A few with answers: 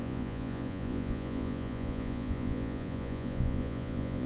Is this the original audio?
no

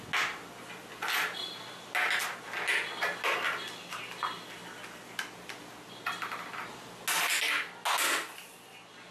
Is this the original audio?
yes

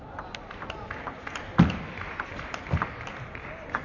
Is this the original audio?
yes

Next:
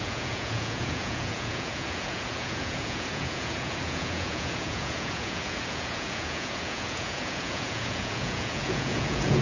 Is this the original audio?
no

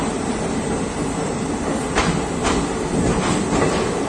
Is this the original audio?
yes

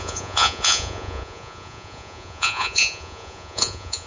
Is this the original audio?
no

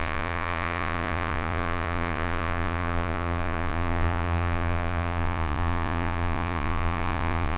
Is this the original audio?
no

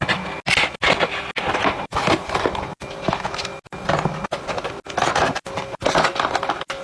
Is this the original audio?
yes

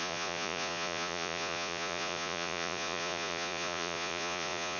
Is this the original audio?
no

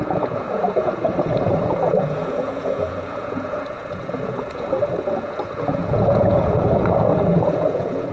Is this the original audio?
no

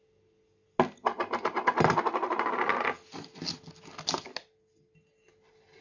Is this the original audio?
yes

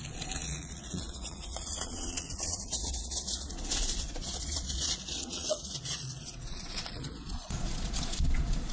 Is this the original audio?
no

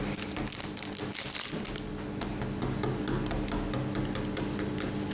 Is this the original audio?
yes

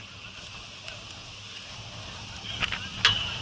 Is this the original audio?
yes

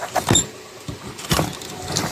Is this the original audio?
yes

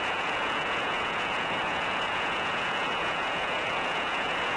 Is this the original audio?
no